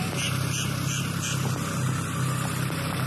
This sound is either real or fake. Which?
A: real